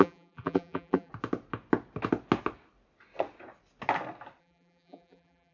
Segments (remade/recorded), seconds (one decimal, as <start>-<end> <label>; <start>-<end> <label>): 0.0-1.1 remade; 1.1-4.4 recorded; 4.4-5.5 remade